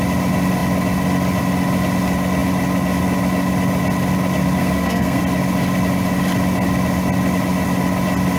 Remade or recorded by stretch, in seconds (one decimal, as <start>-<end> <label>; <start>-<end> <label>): 0.0-4.6 recorded; 4.6-5.2 remade; 5.2-8.4 recorded